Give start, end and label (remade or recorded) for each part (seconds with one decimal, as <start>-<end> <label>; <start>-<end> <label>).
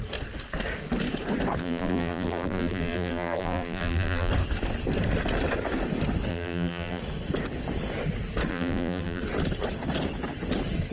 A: 0.0-1.6 recorded; 1.6-4.3 remade; 4.3-6.3 recorded; 6.3-7.0 remade; 7.0-8.5 recorded; 8.5-9.2 remade; 9.2-10.9 recorded